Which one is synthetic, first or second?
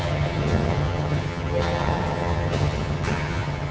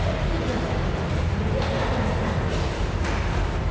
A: first